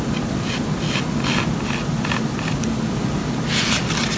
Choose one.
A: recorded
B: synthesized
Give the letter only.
A